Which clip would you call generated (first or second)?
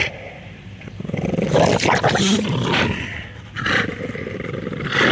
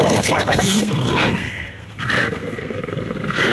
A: second